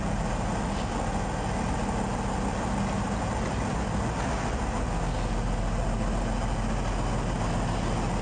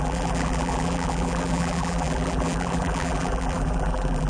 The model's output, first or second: second